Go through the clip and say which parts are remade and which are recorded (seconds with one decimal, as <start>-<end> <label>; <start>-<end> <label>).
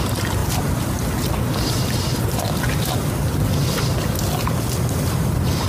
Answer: 0.0-5.7 recorded